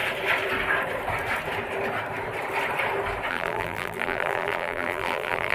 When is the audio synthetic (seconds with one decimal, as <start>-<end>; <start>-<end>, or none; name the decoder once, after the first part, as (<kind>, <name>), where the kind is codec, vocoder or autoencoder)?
3.3-5.5 (vocoder, BigVGAN v2)